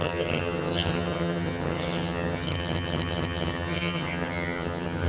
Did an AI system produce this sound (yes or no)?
yes